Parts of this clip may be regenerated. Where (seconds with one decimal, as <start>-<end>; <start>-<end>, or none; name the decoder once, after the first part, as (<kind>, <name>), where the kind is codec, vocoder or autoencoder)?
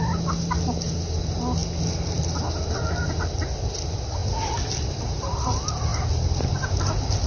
none